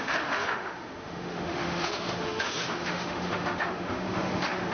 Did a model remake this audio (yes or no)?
yes